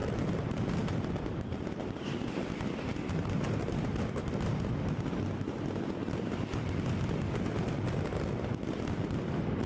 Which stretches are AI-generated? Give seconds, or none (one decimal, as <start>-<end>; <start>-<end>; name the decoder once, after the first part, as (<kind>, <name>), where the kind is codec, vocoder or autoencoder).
1.2-4.5 (vocoder, BigVGAN v2)